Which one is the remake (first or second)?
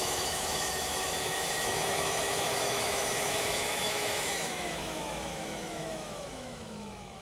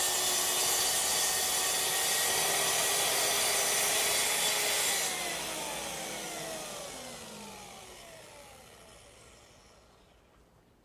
first